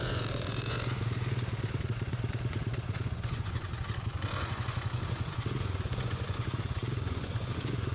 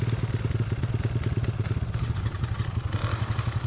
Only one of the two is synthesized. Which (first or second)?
first